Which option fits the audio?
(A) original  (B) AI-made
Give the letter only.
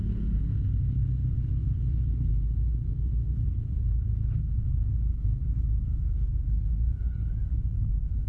B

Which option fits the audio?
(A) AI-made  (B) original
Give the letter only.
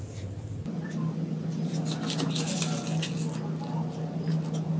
B